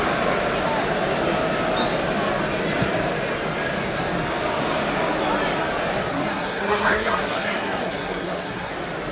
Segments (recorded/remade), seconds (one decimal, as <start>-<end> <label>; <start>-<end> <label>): 0.0-6.1 recorded; 6.1-8.7 remade; 8.7-9.1 recorded